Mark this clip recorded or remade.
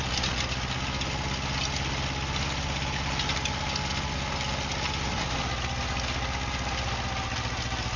recorded